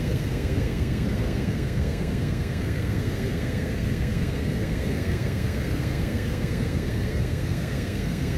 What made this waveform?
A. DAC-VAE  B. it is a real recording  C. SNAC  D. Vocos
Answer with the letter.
C